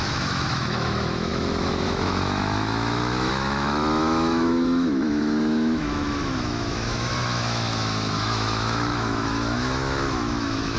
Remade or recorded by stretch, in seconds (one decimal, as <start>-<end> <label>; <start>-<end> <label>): 0.0-10.8 remade